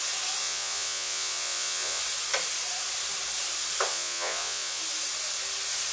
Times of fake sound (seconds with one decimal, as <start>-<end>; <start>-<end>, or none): 0.4-2.0; 3.9-4.8